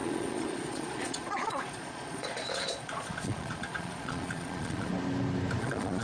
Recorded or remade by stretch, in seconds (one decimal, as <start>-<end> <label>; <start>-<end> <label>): 0.0-4.9 remade; 4.9-5.6 recorded; 5.6-6.0 remade